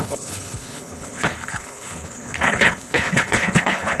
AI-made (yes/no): yes